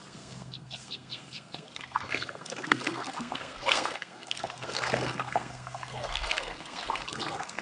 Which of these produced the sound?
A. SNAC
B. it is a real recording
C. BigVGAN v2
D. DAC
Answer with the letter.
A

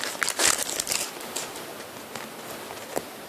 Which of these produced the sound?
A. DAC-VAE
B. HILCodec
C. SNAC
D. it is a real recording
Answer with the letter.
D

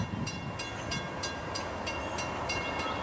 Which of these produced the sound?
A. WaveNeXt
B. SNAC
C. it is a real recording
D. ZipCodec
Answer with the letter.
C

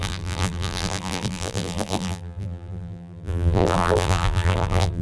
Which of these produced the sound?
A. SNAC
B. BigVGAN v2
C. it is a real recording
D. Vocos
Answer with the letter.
B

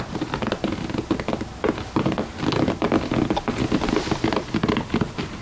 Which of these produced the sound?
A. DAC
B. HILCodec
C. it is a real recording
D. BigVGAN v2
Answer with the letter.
C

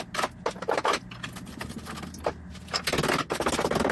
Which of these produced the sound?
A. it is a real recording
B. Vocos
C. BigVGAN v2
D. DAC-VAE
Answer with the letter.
A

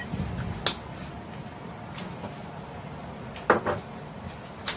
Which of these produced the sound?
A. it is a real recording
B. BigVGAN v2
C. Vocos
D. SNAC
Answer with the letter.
A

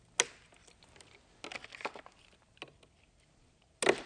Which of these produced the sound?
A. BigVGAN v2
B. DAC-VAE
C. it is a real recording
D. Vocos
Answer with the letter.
C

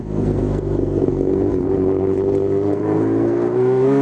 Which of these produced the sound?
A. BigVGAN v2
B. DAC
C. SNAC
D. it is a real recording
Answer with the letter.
C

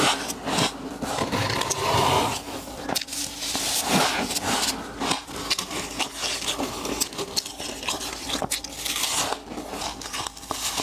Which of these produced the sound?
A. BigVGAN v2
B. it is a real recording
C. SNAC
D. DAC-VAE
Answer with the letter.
B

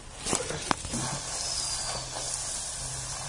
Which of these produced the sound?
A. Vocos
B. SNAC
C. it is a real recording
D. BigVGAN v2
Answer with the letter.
C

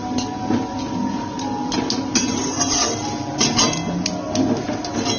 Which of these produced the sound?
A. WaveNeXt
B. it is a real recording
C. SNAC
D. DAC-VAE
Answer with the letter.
B